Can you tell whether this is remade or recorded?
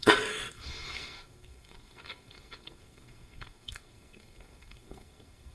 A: remade